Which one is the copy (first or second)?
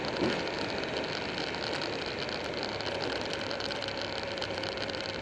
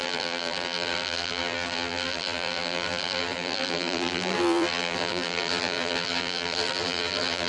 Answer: second